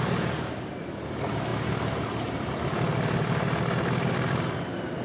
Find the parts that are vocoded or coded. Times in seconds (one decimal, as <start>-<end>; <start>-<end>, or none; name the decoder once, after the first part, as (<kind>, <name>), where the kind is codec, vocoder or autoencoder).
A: none

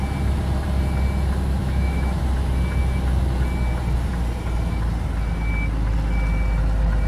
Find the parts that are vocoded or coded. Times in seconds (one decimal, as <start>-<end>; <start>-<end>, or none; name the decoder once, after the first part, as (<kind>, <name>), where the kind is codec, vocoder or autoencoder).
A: 1.6-2.2 (autoencoder, DAC-VAE)

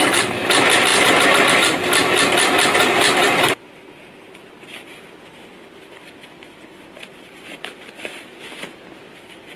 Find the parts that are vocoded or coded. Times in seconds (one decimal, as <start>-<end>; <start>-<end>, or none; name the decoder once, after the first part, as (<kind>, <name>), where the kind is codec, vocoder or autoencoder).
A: none

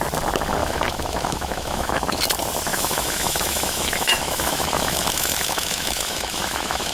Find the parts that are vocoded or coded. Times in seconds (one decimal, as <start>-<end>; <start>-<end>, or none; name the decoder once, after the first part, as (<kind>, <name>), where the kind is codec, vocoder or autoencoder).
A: 0.6-2.2 (autoencoder, DAC-VAE); 2.7-6.9

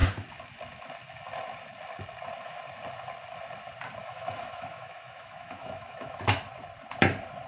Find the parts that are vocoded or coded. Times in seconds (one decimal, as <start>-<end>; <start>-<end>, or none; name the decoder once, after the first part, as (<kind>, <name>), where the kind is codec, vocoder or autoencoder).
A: 4.0-6.4 (autoencoder, DAC-VAE)

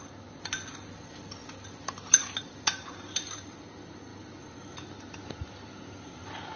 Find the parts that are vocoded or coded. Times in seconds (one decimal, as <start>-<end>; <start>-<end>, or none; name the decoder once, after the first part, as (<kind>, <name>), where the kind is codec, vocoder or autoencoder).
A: none

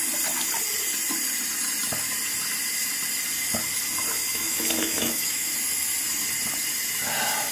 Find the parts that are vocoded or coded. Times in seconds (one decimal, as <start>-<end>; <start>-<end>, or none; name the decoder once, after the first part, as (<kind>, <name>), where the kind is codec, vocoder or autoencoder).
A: 4.3-5.5 (autoencoder, DAC-VAE)